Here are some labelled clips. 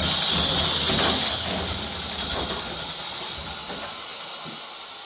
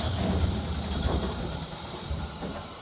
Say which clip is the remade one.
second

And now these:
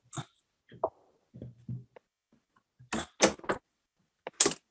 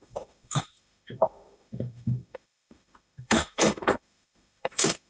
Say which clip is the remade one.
second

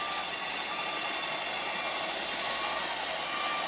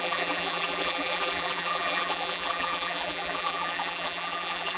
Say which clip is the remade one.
second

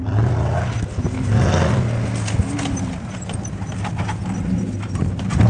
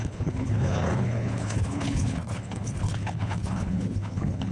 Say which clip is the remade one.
second